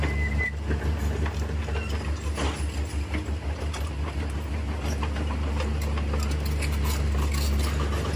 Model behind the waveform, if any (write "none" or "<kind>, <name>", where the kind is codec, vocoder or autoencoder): none